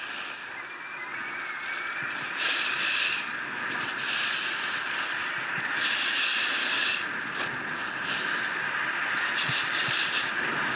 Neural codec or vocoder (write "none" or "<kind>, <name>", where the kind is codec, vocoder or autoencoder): none